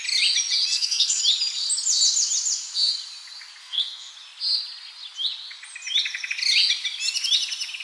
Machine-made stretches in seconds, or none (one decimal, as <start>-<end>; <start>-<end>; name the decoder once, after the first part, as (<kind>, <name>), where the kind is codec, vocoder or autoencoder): 0.7-1.2 (codec, SNAC); 3.6-4.1